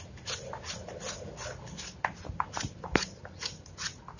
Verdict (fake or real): real